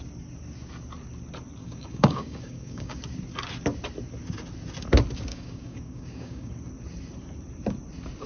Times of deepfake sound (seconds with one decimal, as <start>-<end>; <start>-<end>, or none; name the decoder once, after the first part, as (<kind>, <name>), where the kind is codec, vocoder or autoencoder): 1.6-3.0 (codec, DAC); 5.3-6.5